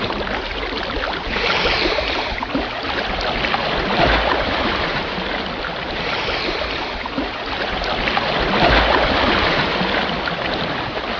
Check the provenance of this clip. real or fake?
real